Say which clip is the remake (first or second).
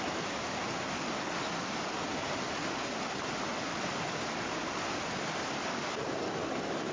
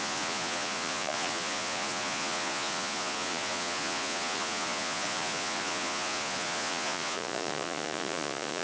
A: second